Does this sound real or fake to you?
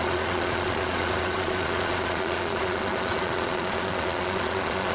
fake